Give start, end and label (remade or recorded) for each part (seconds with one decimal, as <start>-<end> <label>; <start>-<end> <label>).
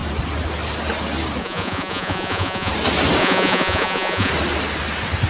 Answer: 0.0-1.4 recorded; 1.4-2.7 remade; 2.7-3.2 recorded; 3.2-4.3 remade; 4.3-5.3 recorded